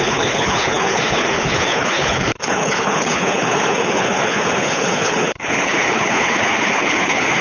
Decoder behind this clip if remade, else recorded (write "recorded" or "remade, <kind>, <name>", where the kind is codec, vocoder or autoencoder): remade, codec, HILCodec